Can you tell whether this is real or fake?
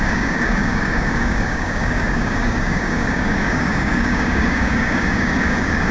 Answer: fake